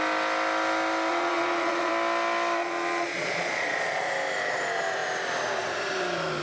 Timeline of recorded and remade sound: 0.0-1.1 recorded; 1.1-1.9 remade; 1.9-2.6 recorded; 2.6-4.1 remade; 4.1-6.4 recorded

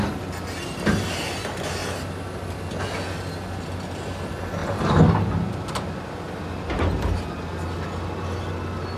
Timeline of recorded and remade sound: 0.0-9.0 recorded

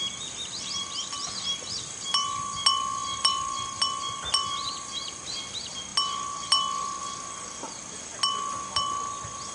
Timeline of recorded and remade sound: 0.0-9.5 recorded

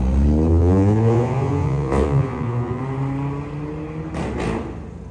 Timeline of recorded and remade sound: 0.0-0.5 recorded; 0.5-2.8 remade; 2.8-5.1 recorded